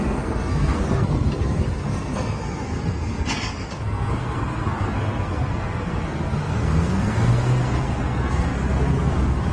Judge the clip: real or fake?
fake